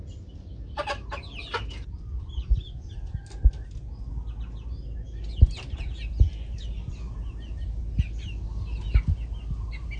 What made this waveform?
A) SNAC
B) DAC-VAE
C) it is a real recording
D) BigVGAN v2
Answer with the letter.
C